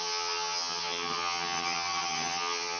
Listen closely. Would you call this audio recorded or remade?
remade